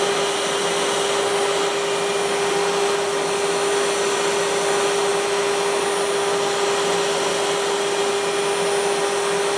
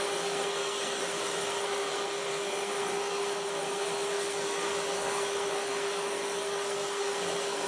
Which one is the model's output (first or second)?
second